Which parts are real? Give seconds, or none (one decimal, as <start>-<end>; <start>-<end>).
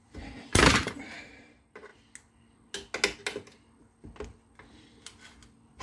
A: 1.9-5.8